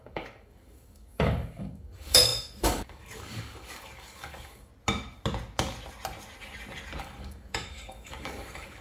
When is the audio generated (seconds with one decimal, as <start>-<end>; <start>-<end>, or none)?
0.0-4.7; 7.0-8.8